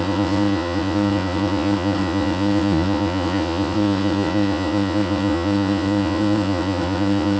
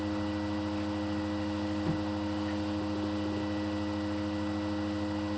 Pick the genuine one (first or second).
second